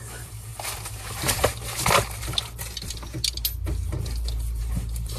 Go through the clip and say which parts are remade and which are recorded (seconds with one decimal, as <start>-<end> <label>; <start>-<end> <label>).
0.0-0.5 remade; 0.5-1.1 recorded; 1.1-1.5 remade; 1.5-4.6 recorded; 4.6-5.2 remade